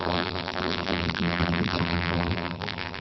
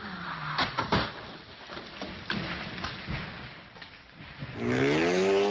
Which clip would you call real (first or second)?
second